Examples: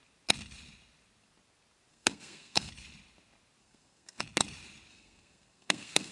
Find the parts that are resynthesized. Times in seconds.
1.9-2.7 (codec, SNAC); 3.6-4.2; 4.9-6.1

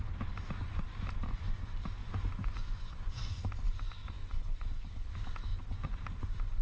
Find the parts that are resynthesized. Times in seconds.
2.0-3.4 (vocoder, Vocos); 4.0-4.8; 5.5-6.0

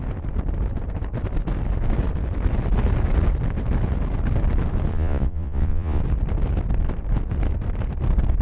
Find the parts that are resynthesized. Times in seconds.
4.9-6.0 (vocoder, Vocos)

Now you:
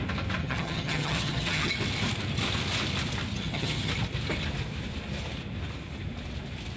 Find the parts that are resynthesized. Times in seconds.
0.4-1.7 (vocoder, HiFi-GAN); 3.3-3.9